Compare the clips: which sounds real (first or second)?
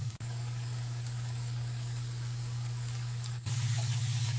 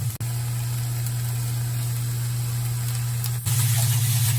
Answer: second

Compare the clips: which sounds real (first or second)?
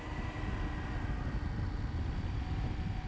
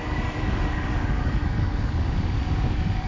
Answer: first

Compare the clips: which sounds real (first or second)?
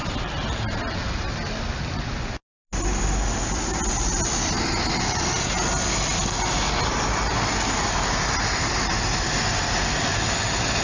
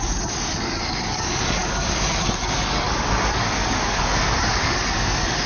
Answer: first